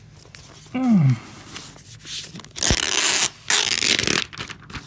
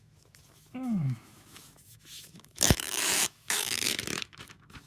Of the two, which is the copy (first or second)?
second